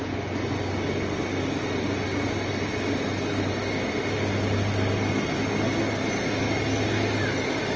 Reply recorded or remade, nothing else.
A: recorded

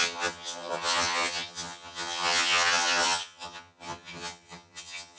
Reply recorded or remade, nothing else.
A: remade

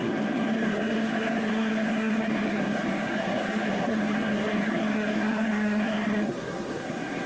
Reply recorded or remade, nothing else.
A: remade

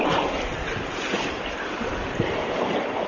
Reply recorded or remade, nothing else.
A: recorded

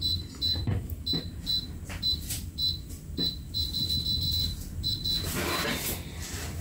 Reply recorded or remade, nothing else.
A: remade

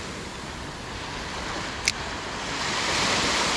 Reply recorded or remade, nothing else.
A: recorded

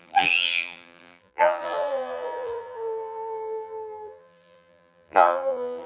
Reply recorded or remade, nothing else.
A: remade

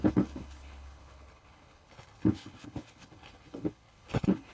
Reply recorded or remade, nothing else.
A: remade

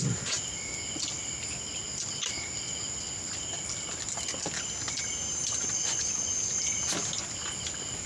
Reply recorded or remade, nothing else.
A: recorded